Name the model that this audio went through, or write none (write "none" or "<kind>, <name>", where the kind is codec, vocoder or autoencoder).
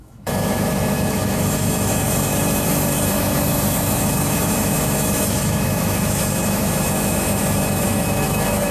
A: autoencoder, DAC-VAE